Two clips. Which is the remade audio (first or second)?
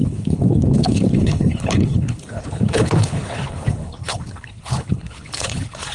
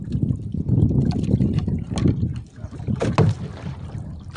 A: first